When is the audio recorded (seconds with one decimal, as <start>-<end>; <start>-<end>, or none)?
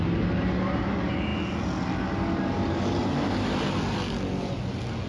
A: 0.0-5.1